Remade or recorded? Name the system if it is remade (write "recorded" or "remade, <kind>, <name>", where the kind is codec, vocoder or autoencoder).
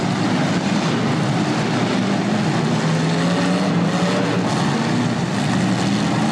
recorded